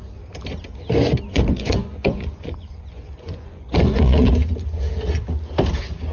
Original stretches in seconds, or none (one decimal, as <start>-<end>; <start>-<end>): 0.0-1.3; 4.3-6.1